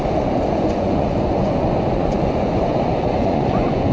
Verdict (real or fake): fake